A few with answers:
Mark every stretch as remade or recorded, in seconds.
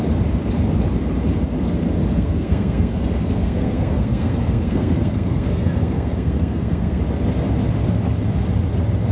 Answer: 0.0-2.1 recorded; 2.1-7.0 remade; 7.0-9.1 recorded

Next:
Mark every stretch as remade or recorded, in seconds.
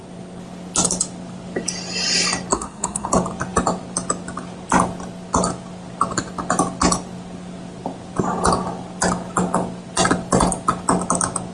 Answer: 0.0-2.5 recorded; 2.5-3.1 remade; 3.1-11.5 recorded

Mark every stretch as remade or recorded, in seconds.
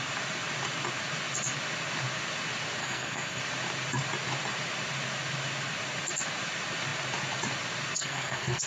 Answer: 0.0-2.8 recorded; 2.8-3.4 remade; 3.4-8.0 recorded; 8.0-8.7 remade